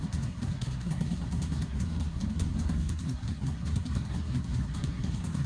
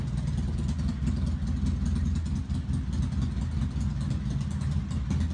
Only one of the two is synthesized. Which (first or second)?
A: first